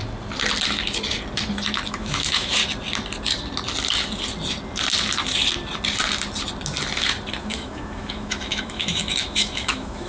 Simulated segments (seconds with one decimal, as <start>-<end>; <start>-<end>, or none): 1.9-2.6; 7.4-10.1